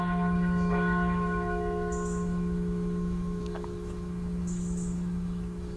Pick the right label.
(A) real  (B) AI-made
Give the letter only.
B